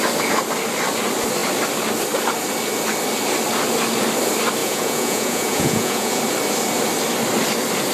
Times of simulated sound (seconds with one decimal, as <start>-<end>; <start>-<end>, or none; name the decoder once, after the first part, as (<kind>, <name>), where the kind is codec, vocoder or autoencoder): 4.6-6.2 (vocoder, Vocos)